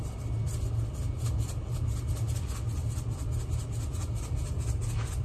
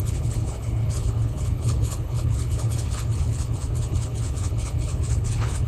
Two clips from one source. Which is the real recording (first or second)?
first